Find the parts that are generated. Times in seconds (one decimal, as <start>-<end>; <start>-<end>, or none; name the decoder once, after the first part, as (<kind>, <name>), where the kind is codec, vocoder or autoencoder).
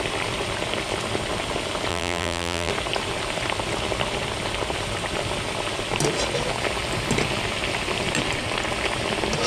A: 1.9-2.7 (vocoder, BigVGAN v2)